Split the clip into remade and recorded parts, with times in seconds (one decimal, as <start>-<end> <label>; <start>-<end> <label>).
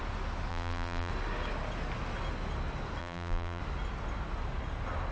0.0-0.5 recorded; 0.5-1.1 remade; 1.1-3.0 recorded; 3.0-3.6 remade; 3.6-5.1 recorded